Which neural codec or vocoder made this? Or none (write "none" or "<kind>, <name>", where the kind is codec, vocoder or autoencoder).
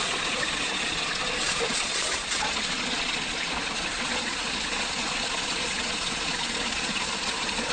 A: vocoder, Vocos